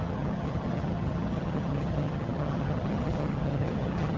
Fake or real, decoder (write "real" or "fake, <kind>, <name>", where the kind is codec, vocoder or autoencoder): fake, vocoder, HiFi-GAN